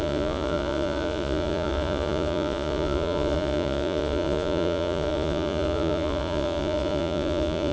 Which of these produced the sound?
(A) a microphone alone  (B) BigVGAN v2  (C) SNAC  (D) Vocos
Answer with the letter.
D